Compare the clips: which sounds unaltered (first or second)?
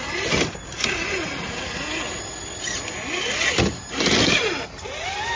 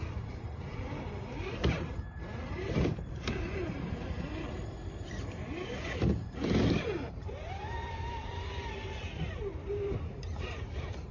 first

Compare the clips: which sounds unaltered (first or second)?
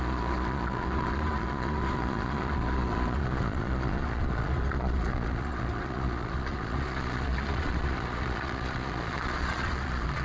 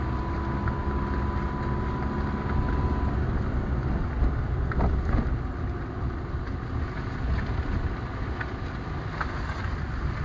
second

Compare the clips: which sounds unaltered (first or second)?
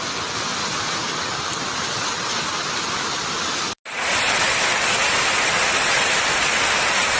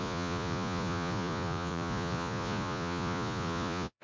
first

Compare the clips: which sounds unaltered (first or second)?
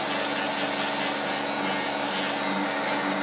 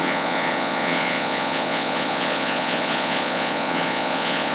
first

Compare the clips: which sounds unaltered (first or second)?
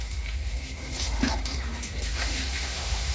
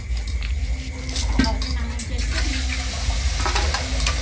second